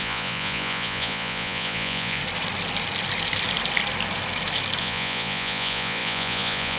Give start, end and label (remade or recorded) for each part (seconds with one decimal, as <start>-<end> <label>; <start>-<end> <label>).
0.0-2.2 remade; 2.2-4.8 recorded; 4.8-6.8 remade